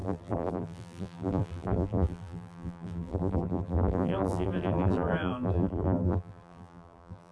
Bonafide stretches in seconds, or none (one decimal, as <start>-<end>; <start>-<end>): none